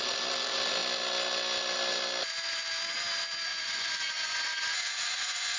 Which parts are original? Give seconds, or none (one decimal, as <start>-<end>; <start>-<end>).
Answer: 0.0-3.5